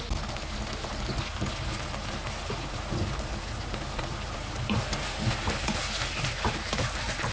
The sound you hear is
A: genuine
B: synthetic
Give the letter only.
A